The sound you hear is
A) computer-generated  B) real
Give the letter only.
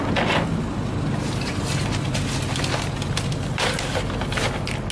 B